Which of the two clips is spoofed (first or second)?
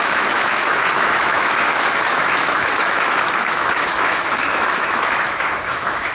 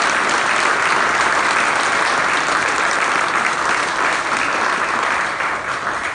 first